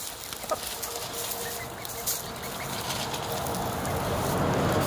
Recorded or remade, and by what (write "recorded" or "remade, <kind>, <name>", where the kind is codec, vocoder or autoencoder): recorded